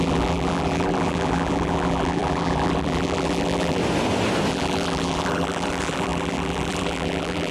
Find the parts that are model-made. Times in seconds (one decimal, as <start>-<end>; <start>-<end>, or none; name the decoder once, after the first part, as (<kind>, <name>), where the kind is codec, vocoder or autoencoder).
0.0-3.8 (vocoder, BigVGAN v2); 4.5-7.5

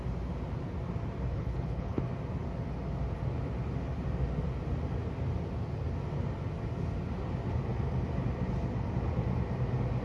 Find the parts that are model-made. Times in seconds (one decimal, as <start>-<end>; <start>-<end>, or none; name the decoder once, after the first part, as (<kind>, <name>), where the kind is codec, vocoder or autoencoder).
1.3-2.0 (codec, HILCodec)

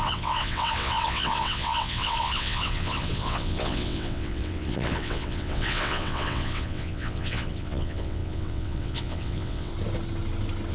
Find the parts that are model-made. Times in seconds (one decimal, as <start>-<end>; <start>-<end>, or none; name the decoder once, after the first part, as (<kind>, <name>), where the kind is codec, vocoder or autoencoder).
0.0-9.7 (vocoder, WaveNeXt)

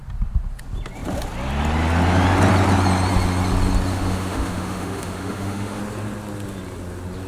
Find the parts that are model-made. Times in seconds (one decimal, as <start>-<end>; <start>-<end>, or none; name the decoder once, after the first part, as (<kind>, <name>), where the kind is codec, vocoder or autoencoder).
3.9-5.8 (autoencoder, DAC-VAE)

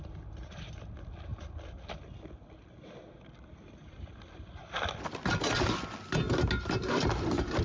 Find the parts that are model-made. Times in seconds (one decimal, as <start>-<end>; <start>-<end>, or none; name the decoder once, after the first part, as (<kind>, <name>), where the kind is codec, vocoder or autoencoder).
none